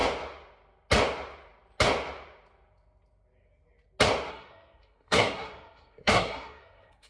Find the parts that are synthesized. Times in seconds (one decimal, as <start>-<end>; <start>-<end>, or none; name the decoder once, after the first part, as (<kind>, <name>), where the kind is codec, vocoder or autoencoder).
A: 4.3-7.1 (codec, SNAC)